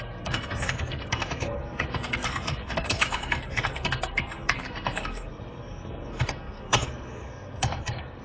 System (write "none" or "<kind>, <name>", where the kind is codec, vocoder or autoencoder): codec, SNAC